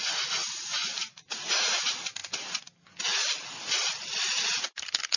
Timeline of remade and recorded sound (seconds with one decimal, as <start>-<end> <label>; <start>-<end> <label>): 0.0-5.2 recorded